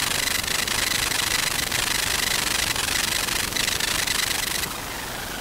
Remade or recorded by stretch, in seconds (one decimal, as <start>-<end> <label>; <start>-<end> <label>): 0.0-5.4 recorded